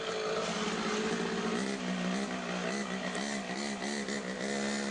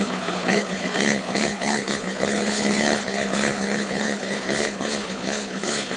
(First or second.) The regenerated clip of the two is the second